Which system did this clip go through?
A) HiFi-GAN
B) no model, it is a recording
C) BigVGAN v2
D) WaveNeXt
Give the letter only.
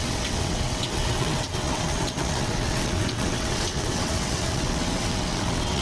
D